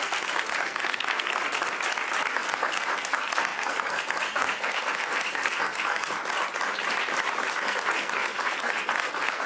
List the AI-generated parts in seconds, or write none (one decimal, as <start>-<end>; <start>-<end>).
0.0-1.6; 2.3-6.2; 7.5-9.5